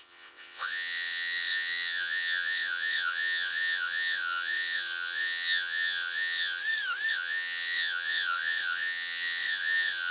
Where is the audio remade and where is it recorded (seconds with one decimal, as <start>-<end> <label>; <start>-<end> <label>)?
0.0-6.6 remade; 6.6-7.1 recorded; 7.1-10.1 remade